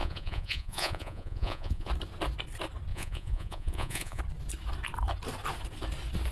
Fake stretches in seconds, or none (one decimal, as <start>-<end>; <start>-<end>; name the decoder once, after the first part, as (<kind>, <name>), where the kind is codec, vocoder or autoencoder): 0.0-1.9 (vocoder, Vocos); 2.9-4.2